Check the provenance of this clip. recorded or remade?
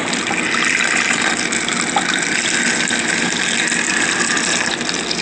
recorded